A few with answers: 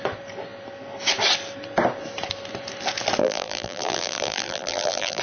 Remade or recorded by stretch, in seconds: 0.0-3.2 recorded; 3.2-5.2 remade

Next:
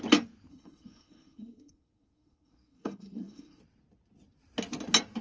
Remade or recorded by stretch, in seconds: 0.0-0.5 recorded; 0.5-3.6 remade; 3.6-5.2 recorded

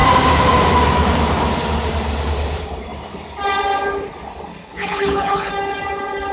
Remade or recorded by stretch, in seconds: 0.0-4.5 recorded; 4.5-5.5 remade; 5.5-6.3 recorded

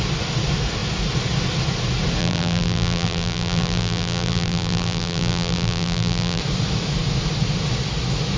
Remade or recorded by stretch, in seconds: 0.0-2.2 recorded; 2.2-6.4 remade; 6.4-8.4 recorded

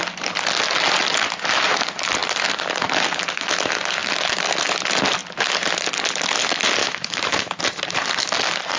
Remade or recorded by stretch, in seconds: 0.0-6.8 recorded; 6.8-7.6 remade; 7.6-8.8 recorded

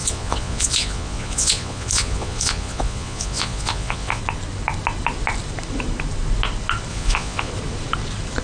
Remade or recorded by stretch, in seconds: 0.0-4.2 remade; 4.2-6.9 recorded; 6.9-7.5 remade; 7.5-8.4 recorded

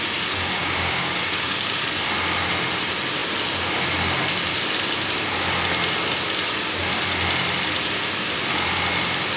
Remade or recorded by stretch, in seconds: 0.0-0.6 recorded; 0.6-1.8 remade; 1.8-9.4 recorded